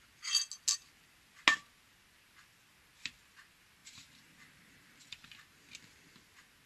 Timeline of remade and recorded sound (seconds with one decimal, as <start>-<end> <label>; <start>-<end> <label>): 0.0-3.8 recorded; 3.8-4.7 remade; 4.7-6.7 recorded